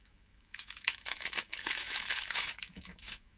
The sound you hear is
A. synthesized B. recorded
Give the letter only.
A